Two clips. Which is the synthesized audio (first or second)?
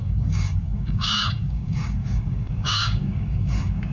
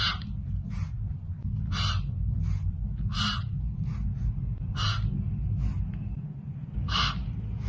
first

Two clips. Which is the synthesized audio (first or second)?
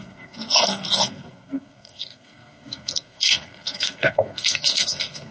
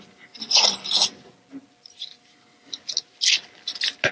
first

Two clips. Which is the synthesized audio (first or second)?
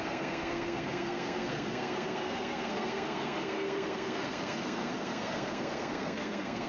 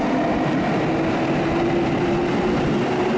first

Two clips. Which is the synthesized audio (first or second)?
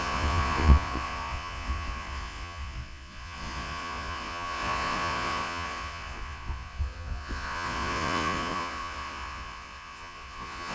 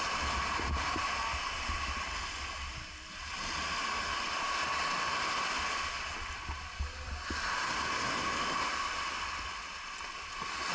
first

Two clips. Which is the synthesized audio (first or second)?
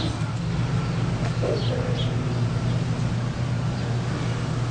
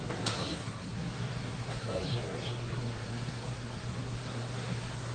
second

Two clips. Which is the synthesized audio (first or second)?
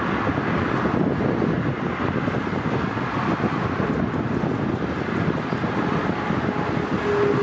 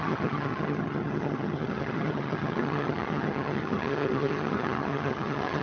second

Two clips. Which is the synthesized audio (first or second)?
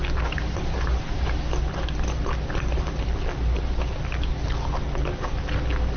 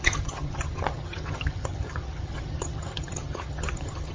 second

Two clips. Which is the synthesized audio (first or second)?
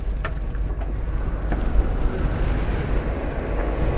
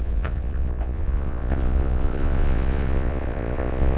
second